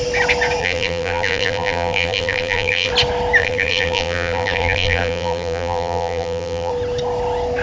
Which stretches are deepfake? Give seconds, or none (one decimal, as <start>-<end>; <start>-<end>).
0.6-2.9; 3.4-6.7